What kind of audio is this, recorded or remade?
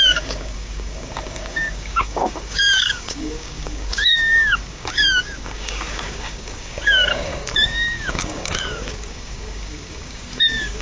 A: remade